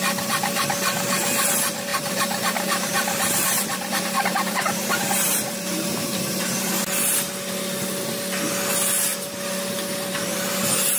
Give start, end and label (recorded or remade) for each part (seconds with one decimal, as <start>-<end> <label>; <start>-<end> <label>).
0.0-1.9 recorded; 1.9-6.7 remade; 6.7-11.0 recorded